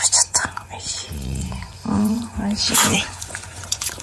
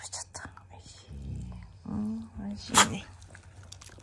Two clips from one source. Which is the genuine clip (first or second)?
second